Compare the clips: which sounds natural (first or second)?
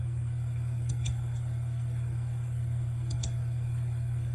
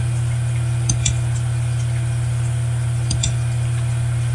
second